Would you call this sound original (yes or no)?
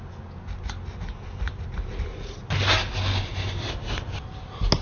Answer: yes